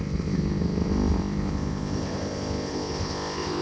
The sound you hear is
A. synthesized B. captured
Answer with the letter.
A